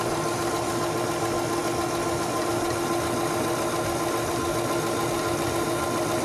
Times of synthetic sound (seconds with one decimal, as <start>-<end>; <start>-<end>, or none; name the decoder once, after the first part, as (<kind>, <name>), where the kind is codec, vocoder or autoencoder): none